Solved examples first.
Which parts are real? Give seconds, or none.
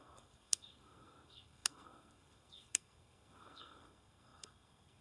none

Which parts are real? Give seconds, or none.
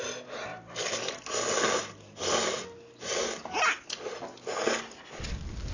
0.0-5.7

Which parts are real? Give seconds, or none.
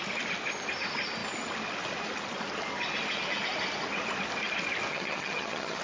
0.0-4.9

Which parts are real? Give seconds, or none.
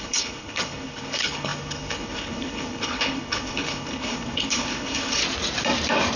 5.2-6.2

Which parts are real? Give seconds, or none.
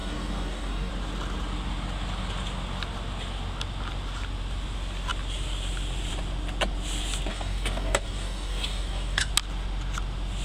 0.9-7.3; 9.3-10.4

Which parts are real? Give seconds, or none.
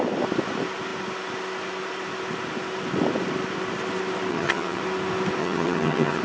0.0-4.3; 4.8-5.4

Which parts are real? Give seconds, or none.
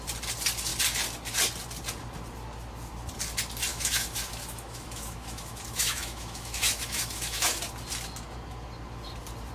0.0-3.7; 7.6-9.5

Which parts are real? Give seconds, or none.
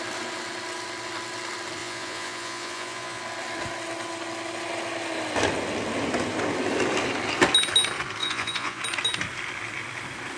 0.0-1.8; 3.2-8.2; 8.8-10.4